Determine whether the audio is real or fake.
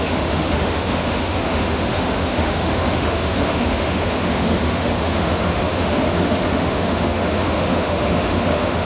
fake